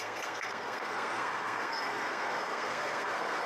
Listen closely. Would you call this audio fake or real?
fake